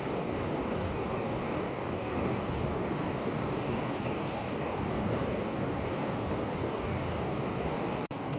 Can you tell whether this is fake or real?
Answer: fake